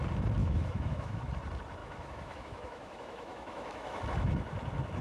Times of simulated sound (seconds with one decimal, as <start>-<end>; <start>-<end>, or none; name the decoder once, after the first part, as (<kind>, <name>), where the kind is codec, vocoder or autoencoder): 0.4-1.3 (autoencoder, DAC-VAE); 1.8-4.0